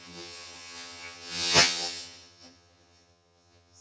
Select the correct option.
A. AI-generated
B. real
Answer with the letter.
A